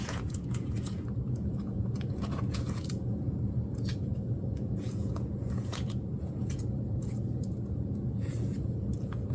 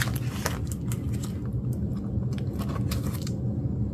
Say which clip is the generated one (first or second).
first